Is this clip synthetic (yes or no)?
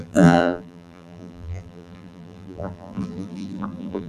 yes